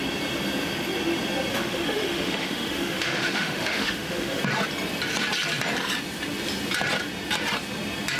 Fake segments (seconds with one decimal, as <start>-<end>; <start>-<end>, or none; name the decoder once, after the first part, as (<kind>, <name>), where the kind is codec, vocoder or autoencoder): 1.5-4.4 (autoencoder, DAC-VAE)